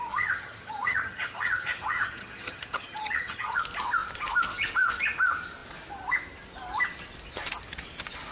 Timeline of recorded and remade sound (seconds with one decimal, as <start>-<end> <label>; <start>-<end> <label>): 0.0-3.6 remade; 3.6-8.3 recorded